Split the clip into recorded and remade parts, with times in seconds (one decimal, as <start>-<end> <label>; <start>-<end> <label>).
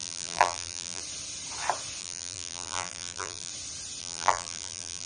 0.0-1.0 remade; 1.0-2.0 recorded; 2.0-3.5 remade; 3.5-4.0 recorded; 4.0-5.1 remade